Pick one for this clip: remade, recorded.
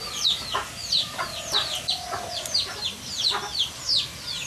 recorded